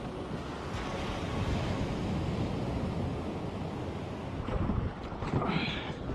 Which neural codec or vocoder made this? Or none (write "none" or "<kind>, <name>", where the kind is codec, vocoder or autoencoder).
none